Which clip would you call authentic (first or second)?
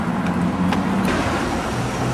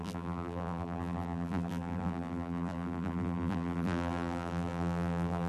first